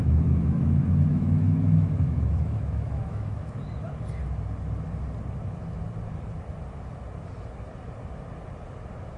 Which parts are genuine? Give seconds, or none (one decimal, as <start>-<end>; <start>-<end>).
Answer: 3.6-9.2